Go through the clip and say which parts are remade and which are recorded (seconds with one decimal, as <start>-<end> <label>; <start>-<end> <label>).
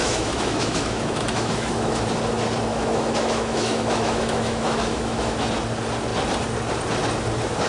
0.0-2.0 remade; 2.0-2.7 recorded; 2.7-5.5 remade; 5.5-7.7 recorded